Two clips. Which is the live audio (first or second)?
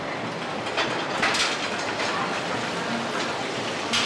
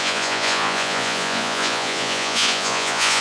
first